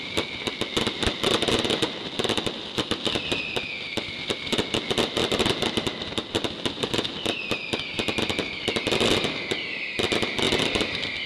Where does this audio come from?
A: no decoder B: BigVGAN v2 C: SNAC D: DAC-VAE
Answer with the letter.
A